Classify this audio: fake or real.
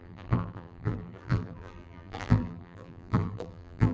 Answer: fake